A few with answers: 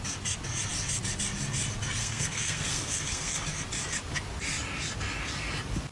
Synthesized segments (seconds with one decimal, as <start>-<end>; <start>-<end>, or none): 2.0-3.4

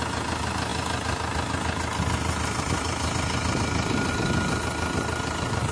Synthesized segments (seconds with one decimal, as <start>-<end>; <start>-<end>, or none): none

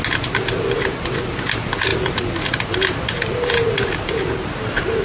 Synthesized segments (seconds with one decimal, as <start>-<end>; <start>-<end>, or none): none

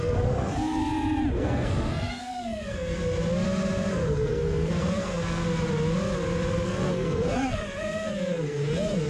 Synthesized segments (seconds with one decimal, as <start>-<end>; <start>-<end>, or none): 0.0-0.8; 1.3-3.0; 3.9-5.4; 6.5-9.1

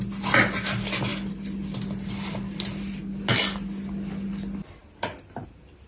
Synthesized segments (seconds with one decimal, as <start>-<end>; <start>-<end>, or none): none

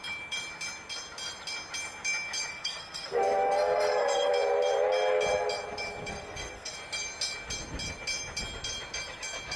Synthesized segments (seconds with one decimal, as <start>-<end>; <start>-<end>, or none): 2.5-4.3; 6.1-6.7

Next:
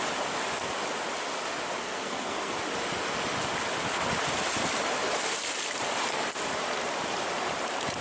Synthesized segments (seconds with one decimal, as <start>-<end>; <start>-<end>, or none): 1.8-2.5